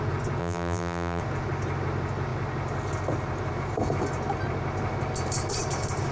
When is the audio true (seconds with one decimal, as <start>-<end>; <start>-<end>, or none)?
0.0-0.4; 1.2-6.1